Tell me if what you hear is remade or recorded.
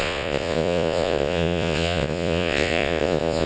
remade